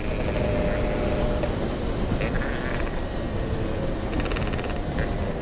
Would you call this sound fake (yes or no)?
no